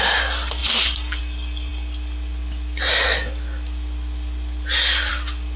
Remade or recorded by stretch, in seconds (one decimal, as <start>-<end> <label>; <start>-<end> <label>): 0.0-5.6 recorded